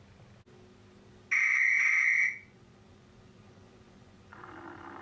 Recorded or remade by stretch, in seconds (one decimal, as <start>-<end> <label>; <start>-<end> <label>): 0.0-1.5 recorded; 1.5-4.5 remade; 4.5-5.0 recorded